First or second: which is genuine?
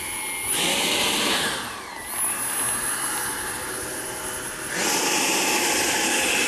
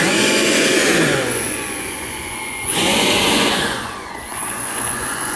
first